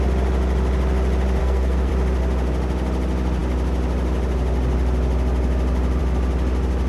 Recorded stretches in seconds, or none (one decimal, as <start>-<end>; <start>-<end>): 0.0-1.4; 1.9-6.9